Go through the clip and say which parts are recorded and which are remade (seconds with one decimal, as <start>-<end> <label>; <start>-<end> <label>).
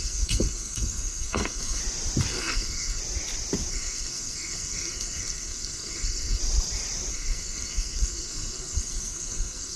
0.0-1.8 remade; 1.8-2.3 recorded; 2.3-3.0 remade; 3.0-3.7 recorded; 3.7-6.4 remade; 6.4-7.1 recorded; 7.1-9.8 remade